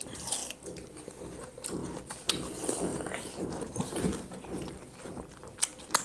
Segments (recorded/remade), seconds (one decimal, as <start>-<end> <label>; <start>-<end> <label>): 0.0-6.0 recorded